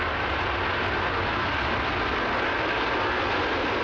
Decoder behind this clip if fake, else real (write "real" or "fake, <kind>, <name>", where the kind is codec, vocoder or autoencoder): real